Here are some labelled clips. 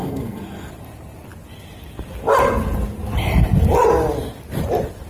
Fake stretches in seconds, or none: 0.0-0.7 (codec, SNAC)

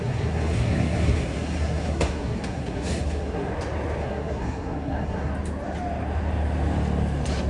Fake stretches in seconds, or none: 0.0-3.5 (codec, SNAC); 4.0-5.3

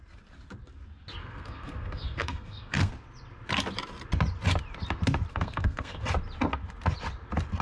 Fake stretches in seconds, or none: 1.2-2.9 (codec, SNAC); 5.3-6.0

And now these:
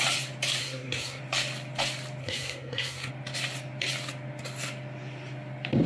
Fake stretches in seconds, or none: 0.6-1.2 (codec, SNAC); 2.2-3.1

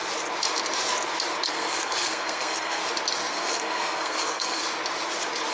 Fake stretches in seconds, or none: 1.5-2.8 (codec, SNAC); 3.3-4.6